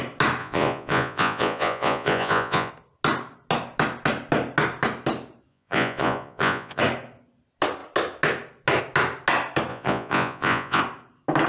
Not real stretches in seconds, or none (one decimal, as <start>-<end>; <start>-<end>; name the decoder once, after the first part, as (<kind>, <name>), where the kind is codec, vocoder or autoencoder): 0.4-2.7 (vocoder, Vocos); 5.5-6.8; 9.7-10.8